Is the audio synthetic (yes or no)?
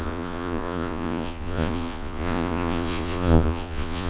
yes